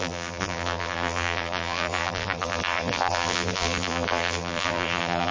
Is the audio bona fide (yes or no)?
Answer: no